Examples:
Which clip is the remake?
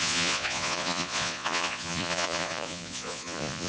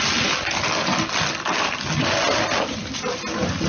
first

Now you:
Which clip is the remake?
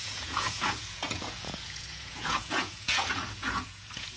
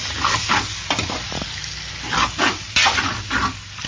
first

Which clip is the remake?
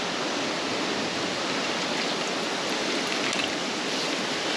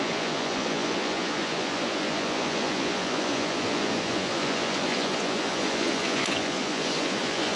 second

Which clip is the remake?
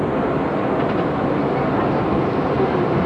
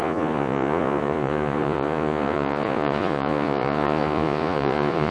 second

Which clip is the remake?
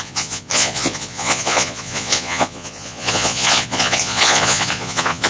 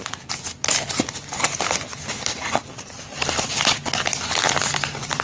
first